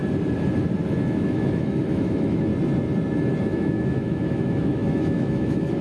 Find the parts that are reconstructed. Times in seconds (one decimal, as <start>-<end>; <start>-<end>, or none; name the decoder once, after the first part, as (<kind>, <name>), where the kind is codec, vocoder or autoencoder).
0.9-2.5 (autoencoder, DAC-VAE); 3.4-5.8